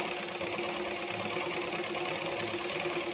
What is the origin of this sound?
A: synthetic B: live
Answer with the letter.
B